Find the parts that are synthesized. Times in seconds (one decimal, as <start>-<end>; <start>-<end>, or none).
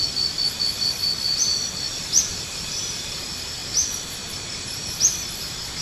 1.9-3.2